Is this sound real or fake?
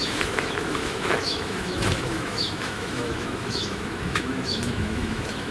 fake